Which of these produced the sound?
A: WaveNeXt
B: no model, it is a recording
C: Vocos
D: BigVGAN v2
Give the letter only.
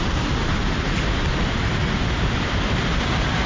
B